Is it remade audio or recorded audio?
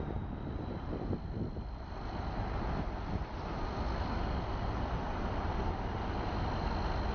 recorded